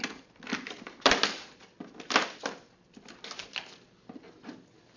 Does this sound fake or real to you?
real